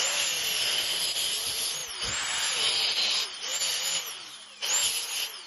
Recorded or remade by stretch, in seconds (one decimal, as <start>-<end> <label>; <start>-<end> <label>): 0.0-5.5 recorded

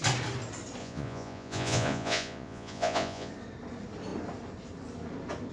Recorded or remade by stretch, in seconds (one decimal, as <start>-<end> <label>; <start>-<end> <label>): 0.0-0.8 recorded; 0.8-3.3 remade; 3.3-5.5 recorded

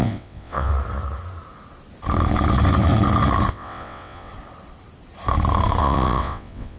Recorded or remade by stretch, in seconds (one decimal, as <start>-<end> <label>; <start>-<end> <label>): 0.0-0.7 remade; 0.7-3.5 recorded; 3.5-4.3 remade; 4.3-5.8 recorded; 5.8-6.8 remade

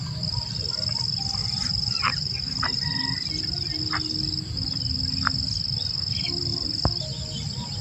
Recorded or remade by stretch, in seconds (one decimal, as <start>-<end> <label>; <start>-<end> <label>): 0.0-1.4 recorded; 1.4-3.8 remade; 3.8-7.8 recorded

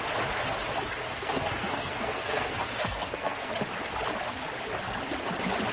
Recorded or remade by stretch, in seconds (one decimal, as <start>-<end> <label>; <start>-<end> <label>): 0.0-1.1 recorded; 1.1-3.5 remade; 3.5-5.7 recorded